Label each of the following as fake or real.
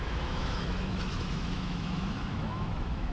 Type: fake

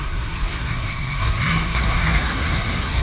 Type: fake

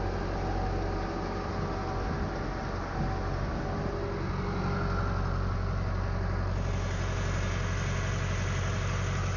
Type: real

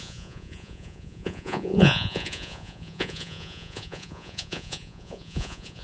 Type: fake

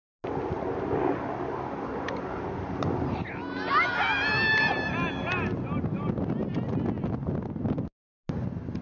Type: real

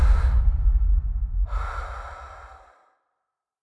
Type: real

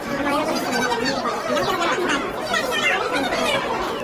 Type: fake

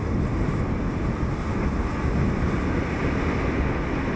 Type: real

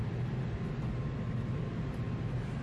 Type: real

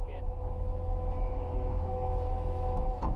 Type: fake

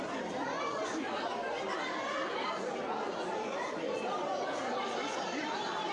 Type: fake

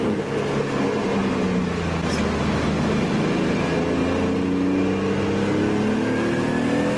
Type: real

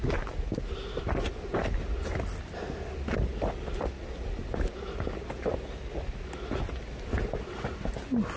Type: real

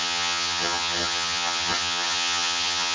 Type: fake